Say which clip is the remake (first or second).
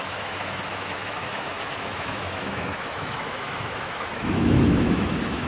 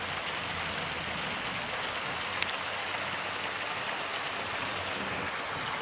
first